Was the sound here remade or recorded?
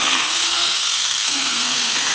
remade